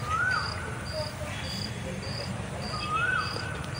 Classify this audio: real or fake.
fake